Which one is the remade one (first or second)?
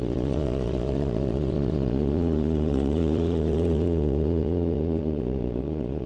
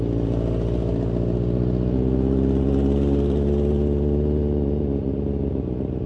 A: first